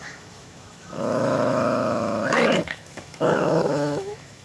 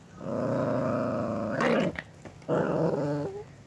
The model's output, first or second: first